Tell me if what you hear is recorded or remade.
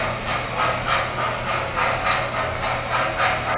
recorded